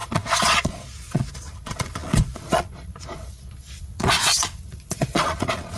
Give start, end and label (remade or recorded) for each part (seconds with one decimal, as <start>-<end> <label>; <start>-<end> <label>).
0.0-5.8 remade